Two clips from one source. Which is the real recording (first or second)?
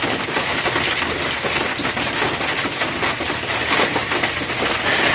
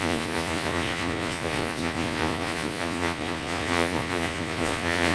first